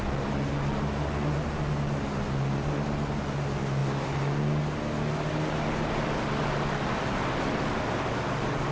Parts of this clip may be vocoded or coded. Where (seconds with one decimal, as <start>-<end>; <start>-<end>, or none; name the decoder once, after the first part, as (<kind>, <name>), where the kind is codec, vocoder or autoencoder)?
none